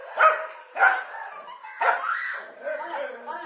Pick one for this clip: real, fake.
real